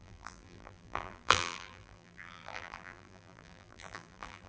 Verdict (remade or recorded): remade